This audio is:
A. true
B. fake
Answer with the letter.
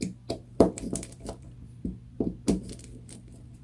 B